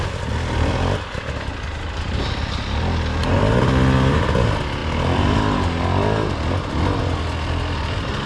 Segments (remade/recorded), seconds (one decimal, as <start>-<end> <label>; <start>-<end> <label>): 0.0-8.3 recorded